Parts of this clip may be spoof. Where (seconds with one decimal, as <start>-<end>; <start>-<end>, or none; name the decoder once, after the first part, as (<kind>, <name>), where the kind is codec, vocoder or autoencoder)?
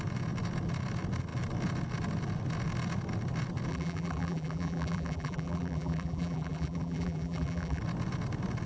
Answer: 3.7-7.8 (vocoder, BigVGAN v2)